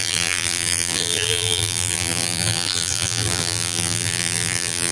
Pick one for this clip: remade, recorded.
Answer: remade